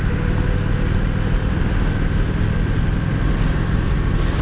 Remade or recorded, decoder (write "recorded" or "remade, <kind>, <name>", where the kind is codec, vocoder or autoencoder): recorded